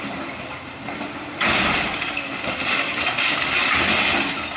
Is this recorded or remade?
recorded